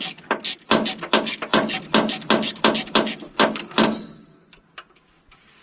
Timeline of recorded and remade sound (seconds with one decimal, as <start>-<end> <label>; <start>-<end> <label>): 0.0-5.6 recorded